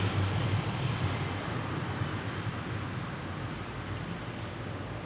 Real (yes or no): yes